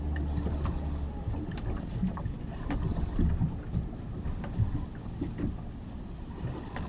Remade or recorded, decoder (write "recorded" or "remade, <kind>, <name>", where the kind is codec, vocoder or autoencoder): recorded